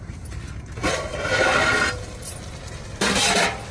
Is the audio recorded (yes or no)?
yes